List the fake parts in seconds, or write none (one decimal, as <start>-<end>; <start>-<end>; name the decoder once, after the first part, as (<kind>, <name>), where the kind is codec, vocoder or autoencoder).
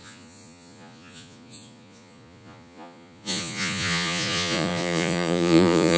0.0-6.0 (vocoder, Vocos)